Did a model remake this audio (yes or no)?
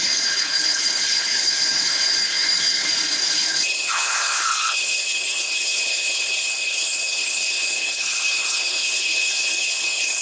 yes